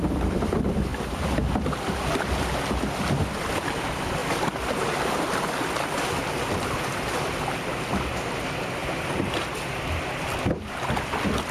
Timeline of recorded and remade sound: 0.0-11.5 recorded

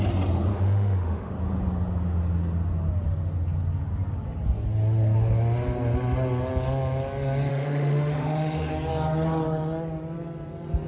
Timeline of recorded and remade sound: 0.0-0.5 recorded; 0.5-1.3 remade; 1.3-7.5 recorded; 7.5-8.7 remade; 8.7-10.9 recorded

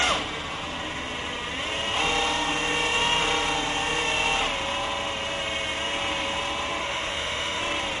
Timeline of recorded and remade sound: 0.0-6.8 recorded; 6.8-7.6 remade; 7.6-8.0 recorded

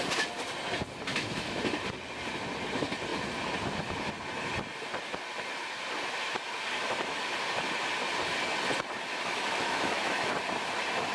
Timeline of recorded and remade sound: 0.0-1.1 recorded; 1.1-1.6 remade; 1.6-9.1 recorded; 9.1-10.3 remade; 10.3-11.1 recorded

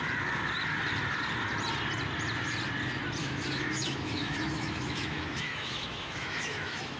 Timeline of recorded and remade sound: 0.0-3.2 recorded; 3.2-7.0 remade

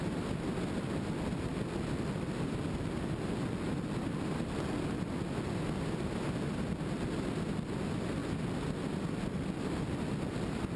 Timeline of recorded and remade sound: 0.0-10.8 recorded